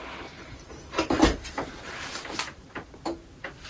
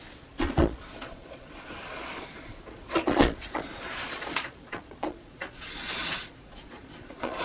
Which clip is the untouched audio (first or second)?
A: first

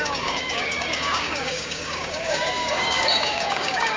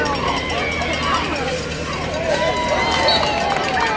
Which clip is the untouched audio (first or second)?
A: second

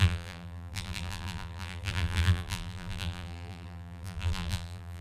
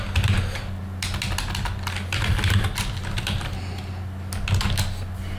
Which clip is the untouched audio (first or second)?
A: second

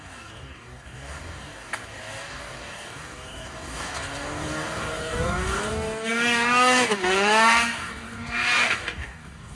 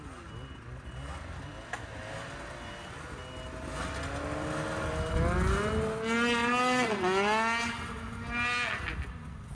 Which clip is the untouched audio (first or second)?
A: second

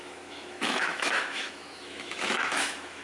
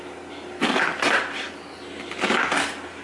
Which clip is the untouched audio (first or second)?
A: second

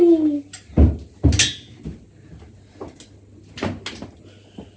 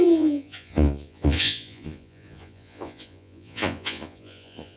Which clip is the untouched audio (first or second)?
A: first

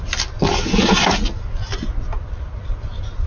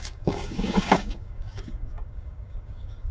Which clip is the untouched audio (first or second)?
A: first